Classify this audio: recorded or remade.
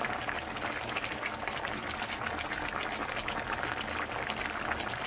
recorded